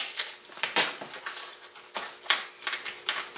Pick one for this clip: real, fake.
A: real